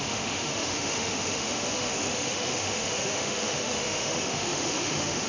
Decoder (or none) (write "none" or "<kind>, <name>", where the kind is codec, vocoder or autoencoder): autoencoder, DAC-VAE